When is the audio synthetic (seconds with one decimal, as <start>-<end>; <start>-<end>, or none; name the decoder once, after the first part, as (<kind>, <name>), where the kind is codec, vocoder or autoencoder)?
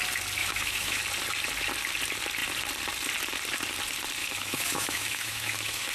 0.4-1.0 (autoencoder, DAC-VAE); 4.2-5.9